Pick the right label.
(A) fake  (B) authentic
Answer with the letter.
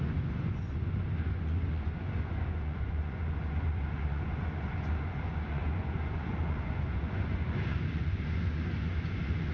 A